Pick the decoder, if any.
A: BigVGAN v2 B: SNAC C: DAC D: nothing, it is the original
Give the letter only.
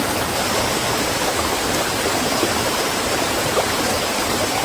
A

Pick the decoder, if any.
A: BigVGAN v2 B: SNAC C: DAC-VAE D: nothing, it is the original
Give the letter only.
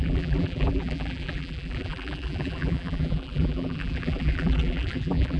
A